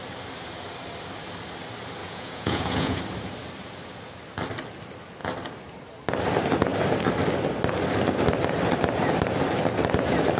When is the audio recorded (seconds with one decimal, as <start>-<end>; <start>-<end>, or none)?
0.0-2.0; 3.0-10.4